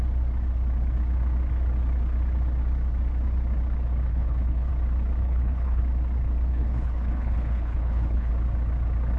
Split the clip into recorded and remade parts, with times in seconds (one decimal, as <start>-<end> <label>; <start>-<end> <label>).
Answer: 0.0-4.1 recorded; 4.1-4.7 remade; 4.7-5.2 recorded; 5.2-5.8 remade; 5.8-6.5 recorded; 6.5-8.3 remade; 8.3-9.2 recorded